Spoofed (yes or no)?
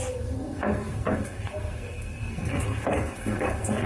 yes